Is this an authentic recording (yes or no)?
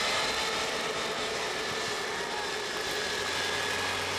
yes